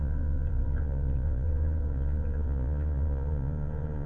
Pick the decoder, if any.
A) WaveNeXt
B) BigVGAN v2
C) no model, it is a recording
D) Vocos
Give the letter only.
D